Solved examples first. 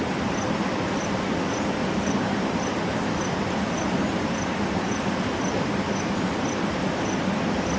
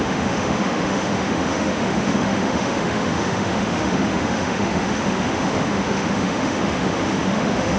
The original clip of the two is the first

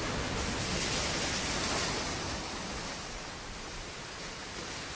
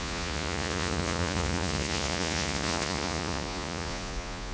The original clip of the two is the first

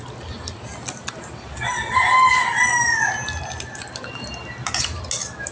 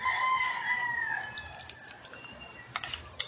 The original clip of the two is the first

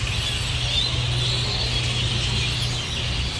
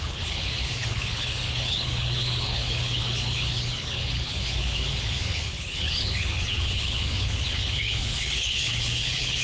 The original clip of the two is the first